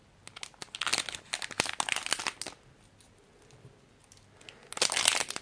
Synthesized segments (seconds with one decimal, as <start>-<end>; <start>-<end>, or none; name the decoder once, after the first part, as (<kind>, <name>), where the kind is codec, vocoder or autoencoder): none